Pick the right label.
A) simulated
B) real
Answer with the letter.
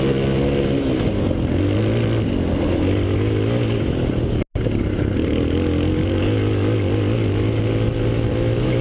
B